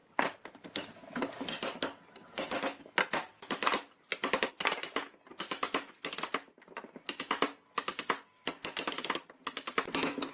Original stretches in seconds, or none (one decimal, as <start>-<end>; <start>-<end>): 0.0-10.3